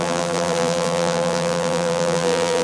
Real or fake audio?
fake